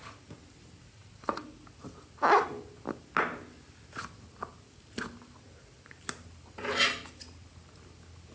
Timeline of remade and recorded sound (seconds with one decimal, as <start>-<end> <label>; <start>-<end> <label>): 0.0-8.3 recorded